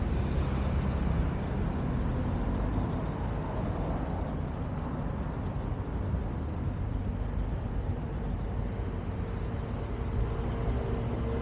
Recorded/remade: recorded